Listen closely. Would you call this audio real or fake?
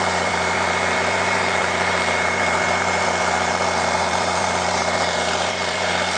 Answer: fake